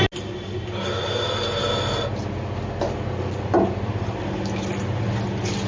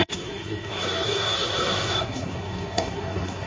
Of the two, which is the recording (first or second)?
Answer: first